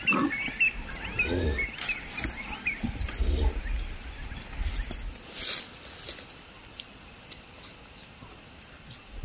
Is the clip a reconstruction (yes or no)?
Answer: no